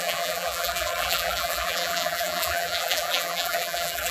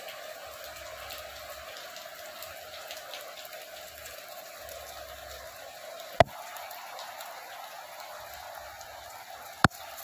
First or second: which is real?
second